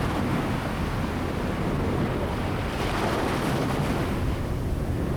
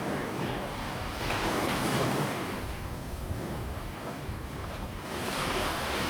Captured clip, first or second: first